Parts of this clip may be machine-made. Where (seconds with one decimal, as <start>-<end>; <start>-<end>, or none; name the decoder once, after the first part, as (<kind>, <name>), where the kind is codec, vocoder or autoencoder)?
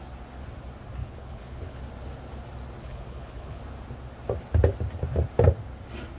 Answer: 1.0-1.8 (codec, HILCodec); 2.8-3.6